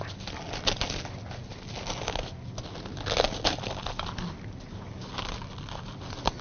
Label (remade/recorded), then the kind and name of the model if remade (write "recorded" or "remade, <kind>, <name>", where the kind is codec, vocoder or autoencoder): recorded